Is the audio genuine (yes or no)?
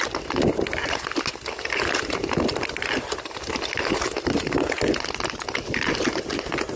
yes